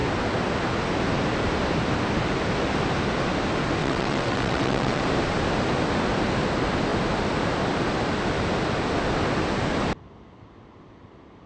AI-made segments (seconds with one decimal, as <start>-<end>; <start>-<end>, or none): 3.8-5.0